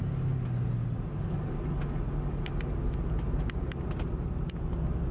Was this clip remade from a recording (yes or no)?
no